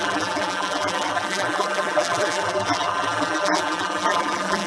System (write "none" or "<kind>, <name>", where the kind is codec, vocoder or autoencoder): vocoder, BigVGAN v2